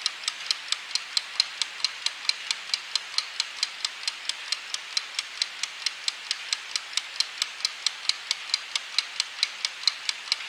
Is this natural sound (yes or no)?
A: yes